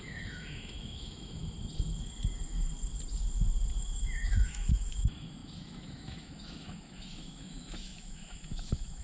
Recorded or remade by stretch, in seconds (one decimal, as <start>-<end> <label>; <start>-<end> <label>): 0.0-1.4 remade; 1.4-3.8 recorded; 3.8-9.0 remade